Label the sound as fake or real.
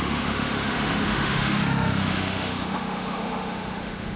fake